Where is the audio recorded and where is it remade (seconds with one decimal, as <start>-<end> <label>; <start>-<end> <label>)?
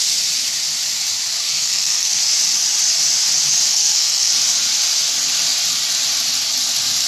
0.0-1.4 recorded; 1.4-2.2 remade; 2.2-3.7 recorded; 3.7-4.3 remade; 4.3-7.1 recorded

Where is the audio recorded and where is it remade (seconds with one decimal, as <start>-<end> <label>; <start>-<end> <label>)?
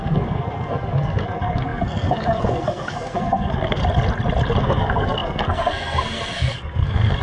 0.0-3.8 remade; 3.8-4.6 recorded; 4.6-7.2 remade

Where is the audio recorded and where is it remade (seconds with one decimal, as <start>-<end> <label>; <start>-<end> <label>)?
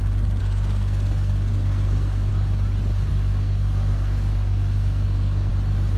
0.0-0.4 recorded; 0.4-2.3 remade; 2.3-3.1 recorded; 3.1-5.5 remade; 5.5-6.0 recorded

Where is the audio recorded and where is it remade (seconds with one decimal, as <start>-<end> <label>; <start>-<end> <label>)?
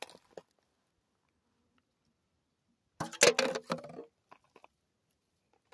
0.0-5.7 recorded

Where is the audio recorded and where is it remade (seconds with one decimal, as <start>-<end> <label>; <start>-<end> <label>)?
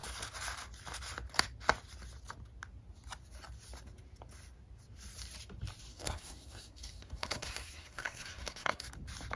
0.0-5.9 recorded; 5.9-8.9 remade; 8.9-9.4 recorded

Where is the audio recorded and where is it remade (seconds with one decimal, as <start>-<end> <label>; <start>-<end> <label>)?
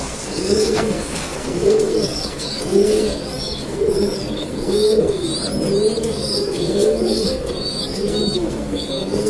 0.0-5.3 remade; 5.3-6.0 recorded; 6.0-9.3 remade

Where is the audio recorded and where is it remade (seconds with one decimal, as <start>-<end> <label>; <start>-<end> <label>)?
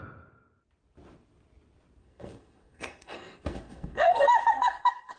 0.0-2.0 recorded; 2.0-5.2 remade